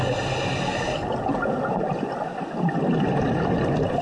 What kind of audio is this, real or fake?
real